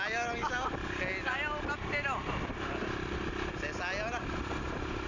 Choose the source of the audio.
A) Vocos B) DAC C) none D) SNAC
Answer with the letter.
C